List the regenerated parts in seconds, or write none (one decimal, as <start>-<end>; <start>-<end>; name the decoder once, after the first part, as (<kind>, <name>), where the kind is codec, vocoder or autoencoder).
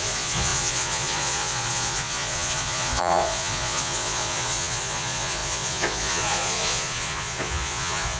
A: 0.0-8.2 (vocoder, Vocos)